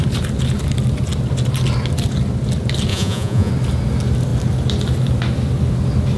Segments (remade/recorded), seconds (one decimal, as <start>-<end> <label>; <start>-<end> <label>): 0.0-2.9 recorded; 2.9-3.5 remade; 3.5-6.2 recorded